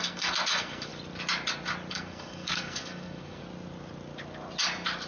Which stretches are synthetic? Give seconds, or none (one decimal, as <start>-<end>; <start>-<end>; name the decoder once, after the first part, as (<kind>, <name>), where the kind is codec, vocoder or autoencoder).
0.0-0.9 (codec, SNAC); 1.9-3.4